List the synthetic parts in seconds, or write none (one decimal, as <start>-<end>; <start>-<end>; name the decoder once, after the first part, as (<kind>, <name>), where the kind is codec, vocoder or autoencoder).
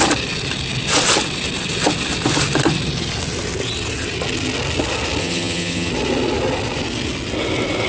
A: 5.2-5.9 (vocoder, HiFi-GAN)